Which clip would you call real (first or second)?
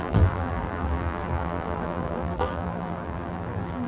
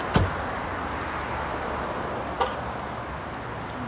second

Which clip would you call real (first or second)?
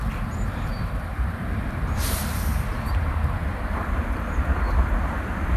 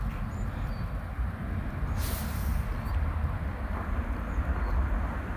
second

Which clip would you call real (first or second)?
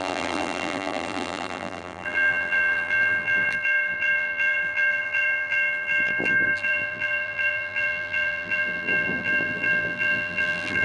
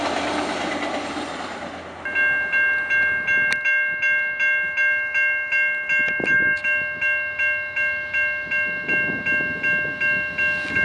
second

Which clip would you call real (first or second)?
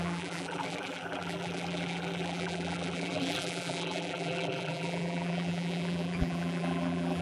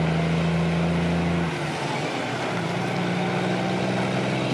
second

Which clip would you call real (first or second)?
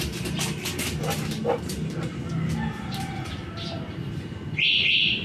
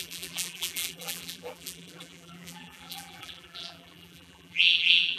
first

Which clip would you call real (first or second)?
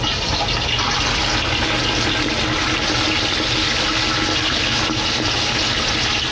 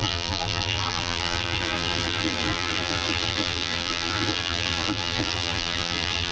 first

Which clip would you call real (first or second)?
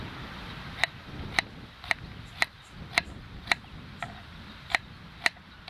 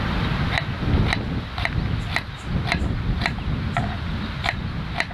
second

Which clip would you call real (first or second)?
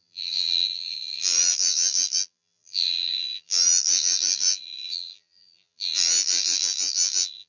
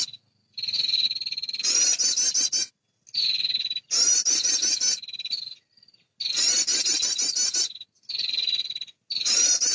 second